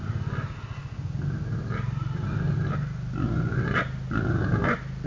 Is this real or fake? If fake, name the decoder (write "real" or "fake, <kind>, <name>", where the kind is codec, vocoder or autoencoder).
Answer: real